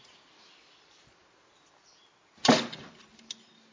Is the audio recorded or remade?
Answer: recorded